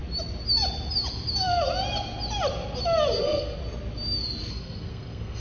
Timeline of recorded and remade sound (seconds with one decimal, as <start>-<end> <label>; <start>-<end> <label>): 0.0-3.2 recorded; 3.2-3.6 remade; 3.6-4.5 recorded; 4.5-5.4 remade